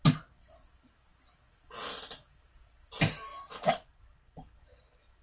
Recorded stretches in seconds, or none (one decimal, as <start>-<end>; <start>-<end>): 0.0-5.2